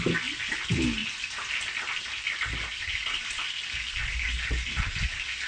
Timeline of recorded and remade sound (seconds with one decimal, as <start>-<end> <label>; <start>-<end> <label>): 0.0-5.5 recorded

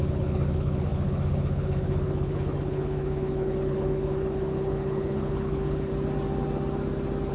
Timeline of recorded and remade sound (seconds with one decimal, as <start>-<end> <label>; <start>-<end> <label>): 0.0-5.9 remade; 5.9-7.3 recorded

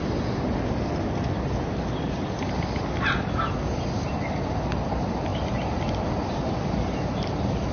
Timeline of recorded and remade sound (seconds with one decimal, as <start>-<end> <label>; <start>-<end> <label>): 0.0-7.7 recorded

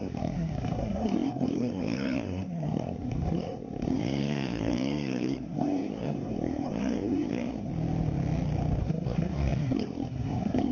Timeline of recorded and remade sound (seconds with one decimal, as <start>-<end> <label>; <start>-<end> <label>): 0.0-7.7 remade; 7.7-8.8 recorded; 8.8-10.7 remade

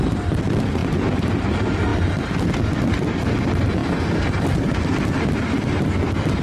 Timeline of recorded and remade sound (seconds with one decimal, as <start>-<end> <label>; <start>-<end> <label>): 0.0-6.4 recorded

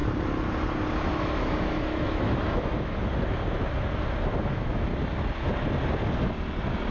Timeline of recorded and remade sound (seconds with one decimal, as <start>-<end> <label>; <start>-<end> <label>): 0.0-1.1 recorded; 1.1-3.0 remade; 3.0-4.4 recorded; 4.4-4.9 remade; 4.9-6.9 recorded

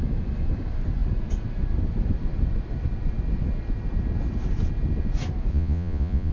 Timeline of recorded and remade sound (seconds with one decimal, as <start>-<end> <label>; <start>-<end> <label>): 0.0-5.5 recorded; 5.5-6.3 remade